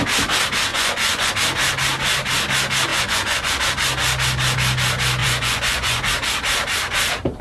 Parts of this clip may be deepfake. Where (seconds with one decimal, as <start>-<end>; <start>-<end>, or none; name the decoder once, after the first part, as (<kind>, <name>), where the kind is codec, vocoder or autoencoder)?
0.7-1.3 (vocoder, Vocos); 2.9-3.6; 5.2-6.1